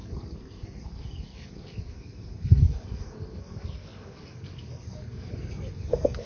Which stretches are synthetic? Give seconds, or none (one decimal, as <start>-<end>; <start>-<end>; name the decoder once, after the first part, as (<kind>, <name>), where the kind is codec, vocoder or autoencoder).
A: 0.0-6.3 (codec, SNAC)